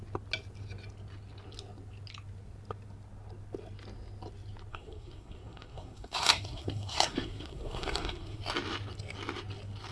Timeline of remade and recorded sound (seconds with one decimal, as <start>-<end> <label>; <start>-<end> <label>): 0.0-4.7 recorded; 4.7-8.4 remade; 8.4-9.9 recorded